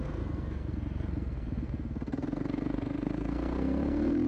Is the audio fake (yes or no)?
yes